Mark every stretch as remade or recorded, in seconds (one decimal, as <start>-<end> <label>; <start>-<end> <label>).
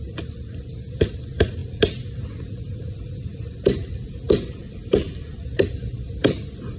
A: 0.0-6.8 recorded